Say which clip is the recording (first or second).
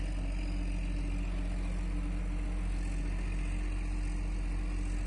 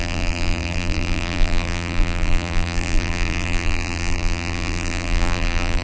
first